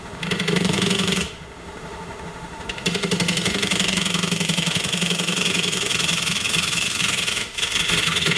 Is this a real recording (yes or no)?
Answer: no